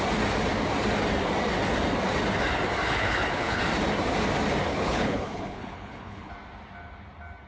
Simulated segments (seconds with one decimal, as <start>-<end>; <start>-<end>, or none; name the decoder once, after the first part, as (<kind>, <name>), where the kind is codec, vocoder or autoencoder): 2.9-3.6 (codec, HILCodec); 4.7-6.3